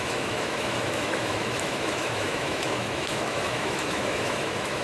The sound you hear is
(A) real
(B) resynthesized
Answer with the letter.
B